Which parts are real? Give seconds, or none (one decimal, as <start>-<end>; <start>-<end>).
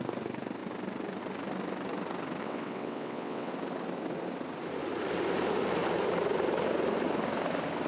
0.0-2.4; 3.5-7.9